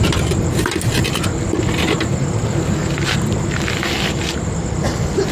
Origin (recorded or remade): remade